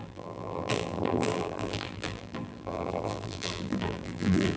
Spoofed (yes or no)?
yes